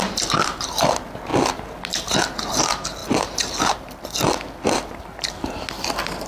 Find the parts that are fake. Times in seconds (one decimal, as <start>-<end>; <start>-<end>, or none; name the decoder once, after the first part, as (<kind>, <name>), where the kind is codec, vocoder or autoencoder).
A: none